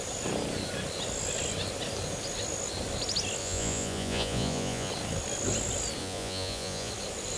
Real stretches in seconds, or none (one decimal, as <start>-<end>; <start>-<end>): 0.0-3.4; 4.9-6.0; 6.9-7.4